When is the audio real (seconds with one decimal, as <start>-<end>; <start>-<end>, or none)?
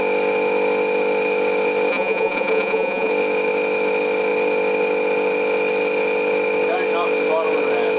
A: 0.0-1.9; 3.1-8.0